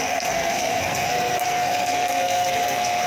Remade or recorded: remade